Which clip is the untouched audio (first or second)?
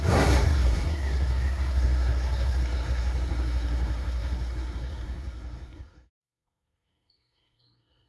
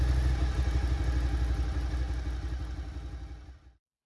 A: second